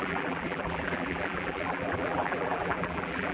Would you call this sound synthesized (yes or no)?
yes